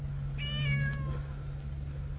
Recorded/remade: recorded